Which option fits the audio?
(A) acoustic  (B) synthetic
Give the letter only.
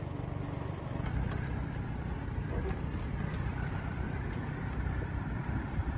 A